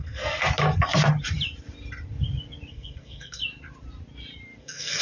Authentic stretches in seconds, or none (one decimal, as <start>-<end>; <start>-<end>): 0.4-2.7; 3.4-4.6